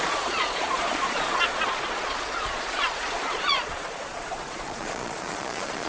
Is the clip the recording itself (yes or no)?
no